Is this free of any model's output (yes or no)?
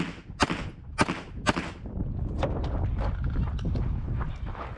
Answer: yes